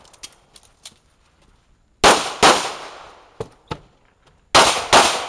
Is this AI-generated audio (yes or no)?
no